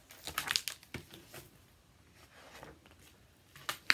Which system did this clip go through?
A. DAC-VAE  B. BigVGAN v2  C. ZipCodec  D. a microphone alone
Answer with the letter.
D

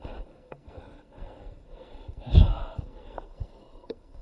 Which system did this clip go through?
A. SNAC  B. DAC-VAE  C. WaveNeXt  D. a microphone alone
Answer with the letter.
A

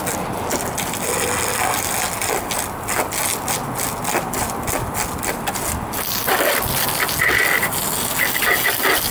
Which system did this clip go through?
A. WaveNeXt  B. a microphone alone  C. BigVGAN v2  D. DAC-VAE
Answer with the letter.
B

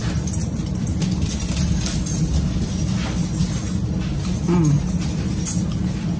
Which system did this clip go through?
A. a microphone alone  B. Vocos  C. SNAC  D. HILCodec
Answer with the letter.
A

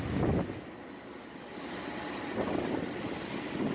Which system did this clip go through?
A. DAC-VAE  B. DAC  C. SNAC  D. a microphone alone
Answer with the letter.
D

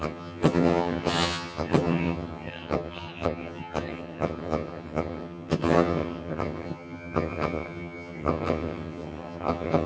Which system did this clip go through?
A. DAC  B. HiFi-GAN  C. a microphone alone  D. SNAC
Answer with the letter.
B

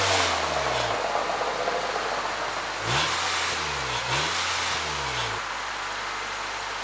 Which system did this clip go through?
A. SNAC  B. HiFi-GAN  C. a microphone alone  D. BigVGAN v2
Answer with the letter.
C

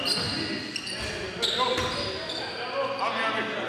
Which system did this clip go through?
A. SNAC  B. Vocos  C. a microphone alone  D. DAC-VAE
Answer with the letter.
C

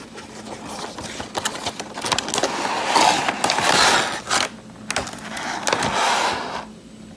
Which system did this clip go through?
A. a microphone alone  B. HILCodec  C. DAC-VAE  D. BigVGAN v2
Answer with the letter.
A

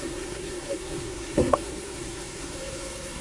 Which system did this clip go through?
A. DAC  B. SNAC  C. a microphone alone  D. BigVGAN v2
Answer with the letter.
B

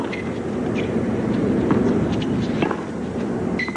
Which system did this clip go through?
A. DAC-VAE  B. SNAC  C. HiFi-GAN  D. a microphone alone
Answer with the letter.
D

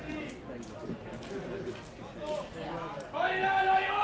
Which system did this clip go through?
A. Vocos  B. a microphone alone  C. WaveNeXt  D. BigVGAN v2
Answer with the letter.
B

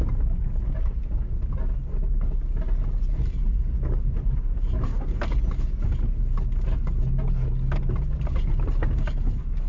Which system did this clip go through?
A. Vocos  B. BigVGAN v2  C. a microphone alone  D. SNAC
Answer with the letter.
C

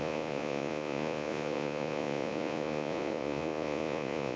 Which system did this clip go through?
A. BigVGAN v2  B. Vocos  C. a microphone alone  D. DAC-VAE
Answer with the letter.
B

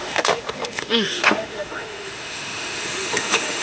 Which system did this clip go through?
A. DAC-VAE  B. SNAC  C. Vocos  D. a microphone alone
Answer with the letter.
A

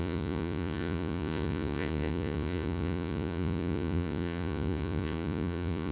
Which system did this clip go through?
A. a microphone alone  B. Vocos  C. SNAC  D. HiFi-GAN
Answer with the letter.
B